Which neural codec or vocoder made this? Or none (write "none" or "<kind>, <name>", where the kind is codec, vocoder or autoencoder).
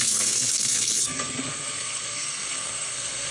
codec, SNAC